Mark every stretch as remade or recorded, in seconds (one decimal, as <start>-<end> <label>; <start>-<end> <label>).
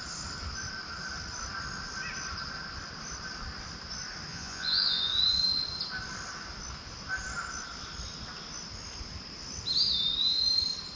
0.0-4.3 recorded; 4.3-5.1 remade; 5.1-11.0 recorded